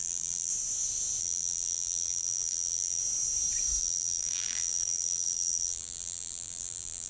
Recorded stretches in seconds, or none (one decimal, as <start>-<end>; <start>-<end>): 0.5-1.2; 3.0-3.8